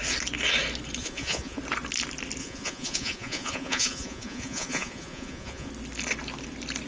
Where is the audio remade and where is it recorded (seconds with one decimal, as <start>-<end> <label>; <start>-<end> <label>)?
0.0-1.0 recorded; 1.0-1.6 remade; 1.6-2.4 recorded; 2.4-5.7 remade; 5.7-6.9 recorded